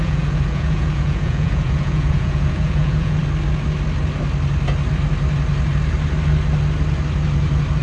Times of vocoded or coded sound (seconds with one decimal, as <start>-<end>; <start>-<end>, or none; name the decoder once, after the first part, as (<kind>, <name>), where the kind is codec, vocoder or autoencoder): 0.0-3.2 (vocoder, Vocos)